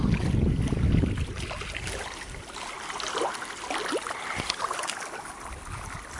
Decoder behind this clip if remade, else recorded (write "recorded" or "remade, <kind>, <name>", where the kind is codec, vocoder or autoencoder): recorded